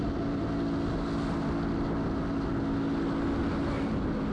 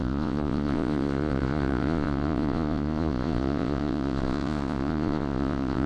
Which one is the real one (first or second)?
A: first